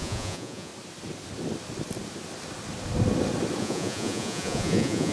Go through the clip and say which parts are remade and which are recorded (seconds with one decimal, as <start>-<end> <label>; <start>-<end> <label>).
0.0-0.7 remade; 0.7-3.6 recorded; 3.6-5.1 remade